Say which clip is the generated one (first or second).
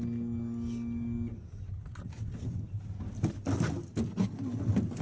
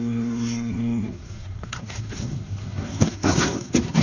second